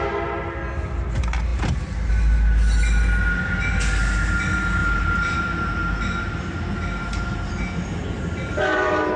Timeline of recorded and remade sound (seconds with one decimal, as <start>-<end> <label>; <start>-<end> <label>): 0.0-4.8 recorded; 4.8-7.5 remade; 7.5-9.2 recorded